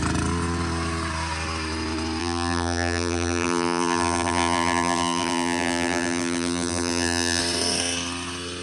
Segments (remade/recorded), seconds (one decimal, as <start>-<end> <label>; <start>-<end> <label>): 0.0-2.2 recorded; 2.2-7.4 remade; 7.4-8.6 recorded